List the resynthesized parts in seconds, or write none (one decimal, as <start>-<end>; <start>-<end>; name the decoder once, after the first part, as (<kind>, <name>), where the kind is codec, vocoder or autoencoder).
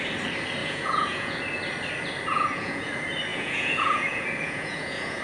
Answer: 0.6-1.4 (vocoder, Vocos); 2.3-2.9; 3.3-5.2